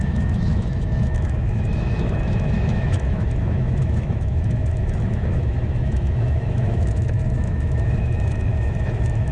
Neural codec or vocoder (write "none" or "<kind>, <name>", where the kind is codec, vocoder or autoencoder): autoencoder, DAC-VAE